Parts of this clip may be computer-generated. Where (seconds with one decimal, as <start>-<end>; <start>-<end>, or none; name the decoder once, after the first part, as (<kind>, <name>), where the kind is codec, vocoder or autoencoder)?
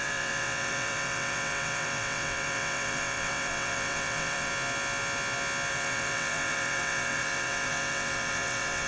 0.0-4.5 (vocoder, WaveNeXt); 5.7-8.9